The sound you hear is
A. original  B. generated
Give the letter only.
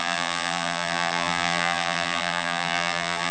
B